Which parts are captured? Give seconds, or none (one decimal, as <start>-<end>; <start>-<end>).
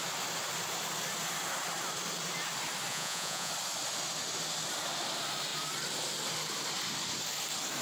0.0-2.9; 3.5-7.8